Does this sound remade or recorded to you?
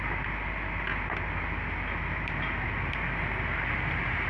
recorded